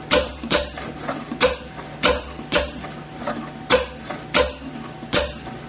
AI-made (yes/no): no